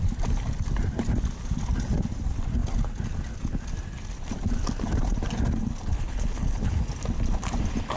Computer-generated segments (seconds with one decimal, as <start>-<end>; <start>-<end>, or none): 5.9-6.8